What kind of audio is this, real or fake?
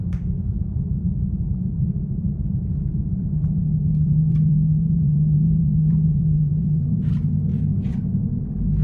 fake